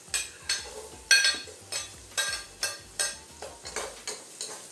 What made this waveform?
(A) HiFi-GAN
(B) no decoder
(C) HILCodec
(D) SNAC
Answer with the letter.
B